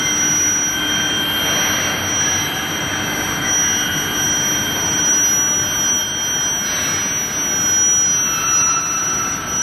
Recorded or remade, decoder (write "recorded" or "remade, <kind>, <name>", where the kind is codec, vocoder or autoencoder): recorded